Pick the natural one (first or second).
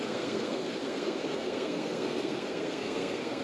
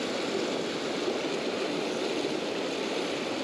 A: second